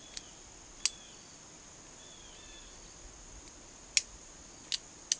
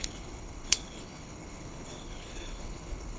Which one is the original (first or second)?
first